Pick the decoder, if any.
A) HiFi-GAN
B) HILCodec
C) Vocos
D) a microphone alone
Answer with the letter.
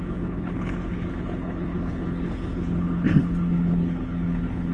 B